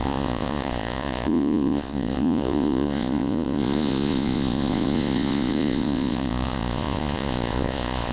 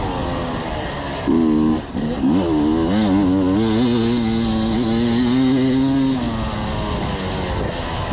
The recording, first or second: second